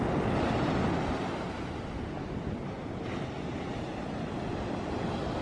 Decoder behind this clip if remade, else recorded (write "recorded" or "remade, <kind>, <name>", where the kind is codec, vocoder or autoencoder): recorded